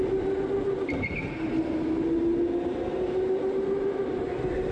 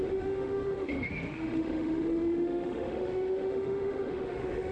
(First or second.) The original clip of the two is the first